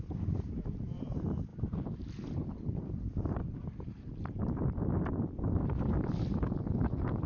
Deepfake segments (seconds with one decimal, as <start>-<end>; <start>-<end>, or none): 0.0-1.5; 5.6-7.3